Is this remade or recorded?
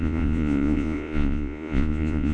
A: remade